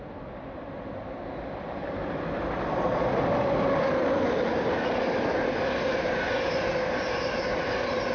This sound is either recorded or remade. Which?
recorded